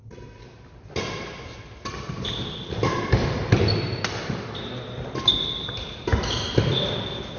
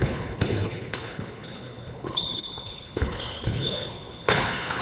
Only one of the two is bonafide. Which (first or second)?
first